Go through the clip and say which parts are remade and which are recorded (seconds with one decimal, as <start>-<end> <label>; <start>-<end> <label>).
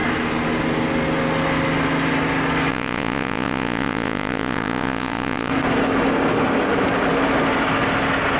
0.0-2.7 recorded; 2.7-5.5 remade; 5.5-8.4 recorded